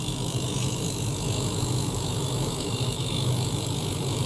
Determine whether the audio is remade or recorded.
remade